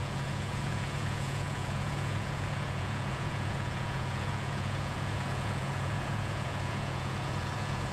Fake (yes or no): yes